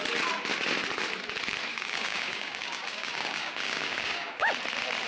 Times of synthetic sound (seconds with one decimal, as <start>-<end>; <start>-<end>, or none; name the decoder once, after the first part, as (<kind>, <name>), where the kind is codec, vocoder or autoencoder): 1.7-4.5 (codec, DAC)